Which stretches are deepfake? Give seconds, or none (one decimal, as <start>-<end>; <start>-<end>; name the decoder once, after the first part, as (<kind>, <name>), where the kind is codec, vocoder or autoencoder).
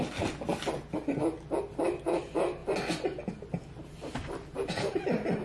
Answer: none